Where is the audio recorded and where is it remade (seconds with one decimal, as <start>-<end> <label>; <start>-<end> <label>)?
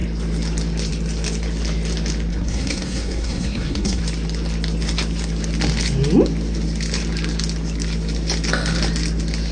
0.0-2.3 recorded; 2.3-4.0 remade; 4.0-9.5 recorded